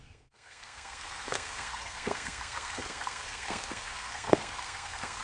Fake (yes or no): yes